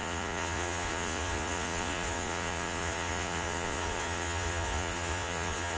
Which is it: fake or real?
fake